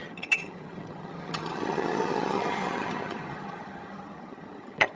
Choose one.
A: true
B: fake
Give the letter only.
B